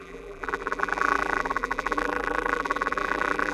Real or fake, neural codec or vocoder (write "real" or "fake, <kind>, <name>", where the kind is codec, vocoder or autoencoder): fake, vocoder, BigVGAN v2